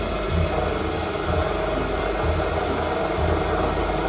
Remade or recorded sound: recorded